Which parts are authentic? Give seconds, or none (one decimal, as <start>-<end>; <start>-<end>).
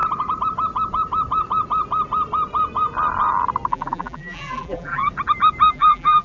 0.0-3.7; 5.0-5.7